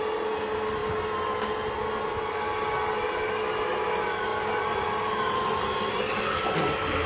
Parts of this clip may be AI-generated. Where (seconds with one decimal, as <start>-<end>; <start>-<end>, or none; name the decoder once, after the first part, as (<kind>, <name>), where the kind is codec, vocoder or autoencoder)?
none